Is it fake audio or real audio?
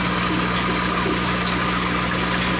real